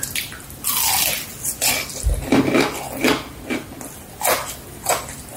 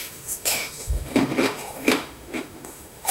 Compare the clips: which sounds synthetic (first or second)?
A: second